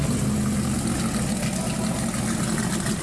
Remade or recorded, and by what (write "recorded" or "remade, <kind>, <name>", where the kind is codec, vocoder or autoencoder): recorded